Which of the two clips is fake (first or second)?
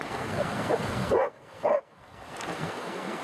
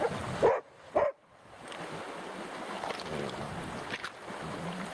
first